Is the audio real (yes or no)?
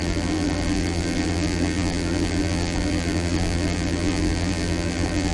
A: no